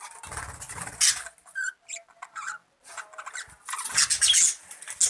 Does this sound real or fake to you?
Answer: real